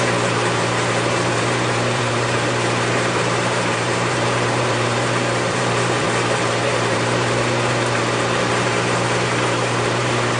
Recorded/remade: remade